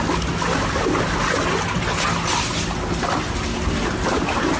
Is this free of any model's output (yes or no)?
yes